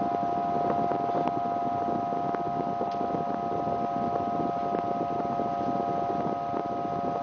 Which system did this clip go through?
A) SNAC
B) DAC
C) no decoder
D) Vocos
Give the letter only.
C